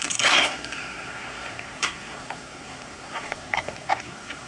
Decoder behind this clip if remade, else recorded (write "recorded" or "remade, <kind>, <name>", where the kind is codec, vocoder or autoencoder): remade, codec, SNAC